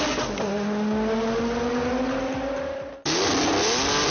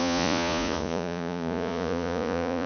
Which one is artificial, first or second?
second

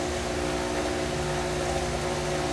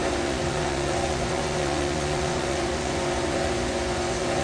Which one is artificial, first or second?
second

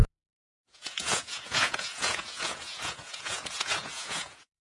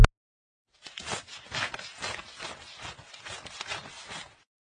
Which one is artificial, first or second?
first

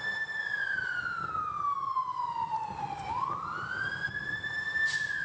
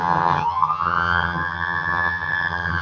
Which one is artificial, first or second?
second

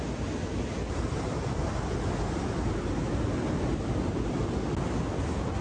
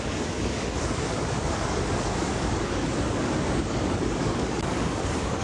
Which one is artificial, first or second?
second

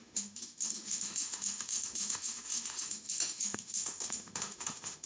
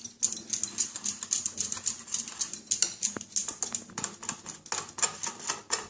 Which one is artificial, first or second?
first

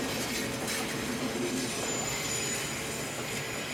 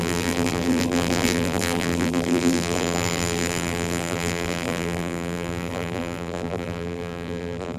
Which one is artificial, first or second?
second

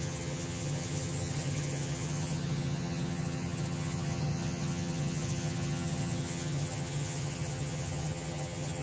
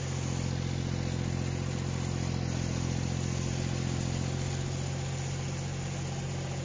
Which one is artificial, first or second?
first